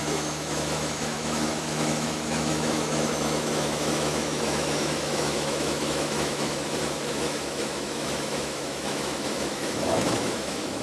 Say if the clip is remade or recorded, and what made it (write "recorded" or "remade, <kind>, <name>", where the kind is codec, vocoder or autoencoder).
remade, autoencoder, DAC-VAE